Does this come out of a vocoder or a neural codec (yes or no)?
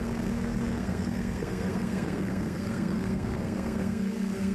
yes